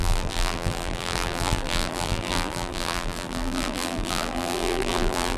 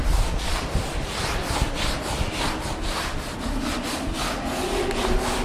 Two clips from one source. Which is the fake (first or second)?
first